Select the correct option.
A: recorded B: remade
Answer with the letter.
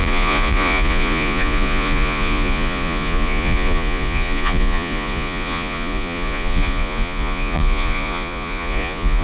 B